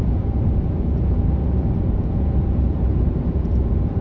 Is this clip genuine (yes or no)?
no